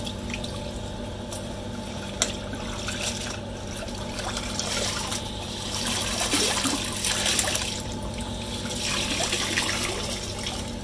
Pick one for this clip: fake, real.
real